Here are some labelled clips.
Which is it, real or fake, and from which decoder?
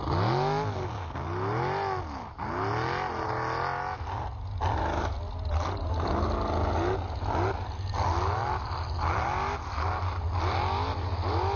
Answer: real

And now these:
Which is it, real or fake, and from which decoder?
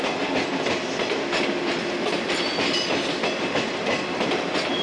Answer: real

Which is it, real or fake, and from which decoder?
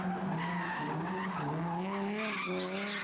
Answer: real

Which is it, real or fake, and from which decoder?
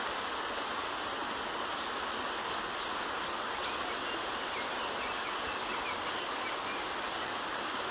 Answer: real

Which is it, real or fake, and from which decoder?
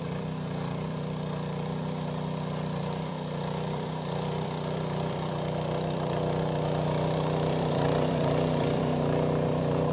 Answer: fake, vocoder, BigVGAN v2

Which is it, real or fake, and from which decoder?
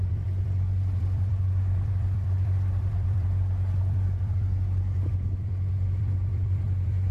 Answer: fake, vocoder, BigVGAN v2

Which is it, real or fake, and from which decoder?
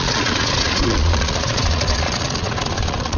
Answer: fake, vocoder, Vocos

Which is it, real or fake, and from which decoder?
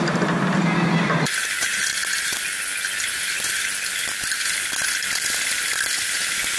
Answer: real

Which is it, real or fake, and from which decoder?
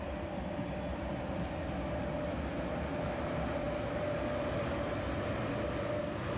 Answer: real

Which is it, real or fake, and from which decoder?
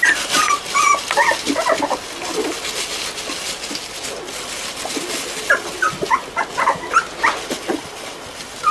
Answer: real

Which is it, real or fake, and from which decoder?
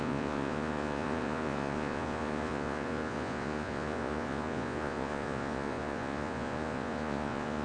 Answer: fake, vocoder, Vocos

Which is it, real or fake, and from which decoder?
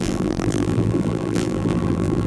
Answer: fake, vocoder, BigVGAN v2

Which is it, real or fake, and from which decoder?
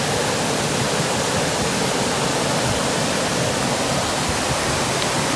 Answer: real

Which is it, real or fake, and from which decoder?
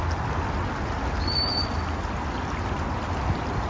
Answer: real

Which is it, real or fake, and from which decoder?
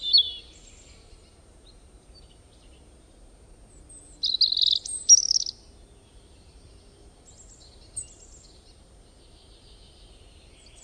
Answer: real